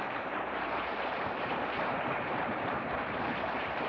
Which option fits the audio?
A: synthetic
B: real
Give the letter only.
A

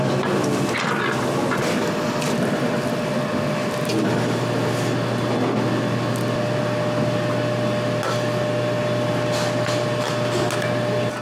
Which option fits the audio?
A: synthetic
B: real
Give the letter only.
B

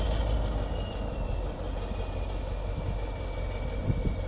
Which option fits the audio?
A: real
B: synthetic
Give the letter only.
A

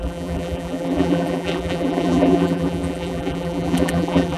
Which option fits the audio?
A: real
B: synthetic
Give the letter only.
B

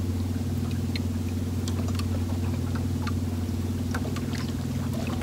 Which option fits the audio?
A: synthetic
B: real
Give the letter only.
B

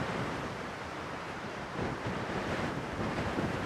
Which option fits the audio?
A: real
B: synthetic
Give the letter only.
B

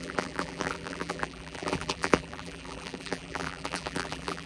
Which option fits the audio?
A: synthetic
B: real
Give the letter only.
A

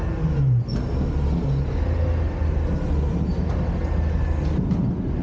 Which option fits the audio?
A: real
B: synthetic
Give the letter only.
A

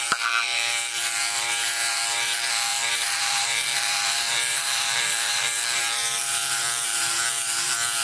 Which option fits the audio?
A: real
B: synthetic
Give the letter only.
B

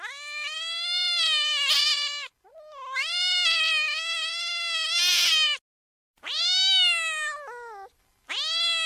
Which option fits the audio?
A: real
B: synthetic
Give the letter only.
A